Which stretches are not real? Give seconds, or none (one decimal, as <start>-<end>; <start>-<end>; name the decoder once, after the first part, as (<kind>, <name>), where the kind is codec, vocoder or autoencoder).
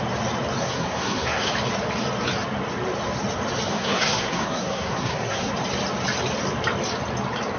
0.6-1.5 (codec, SNAC); 3.7-5.5